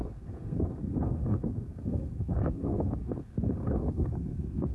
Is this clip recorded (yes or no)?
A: no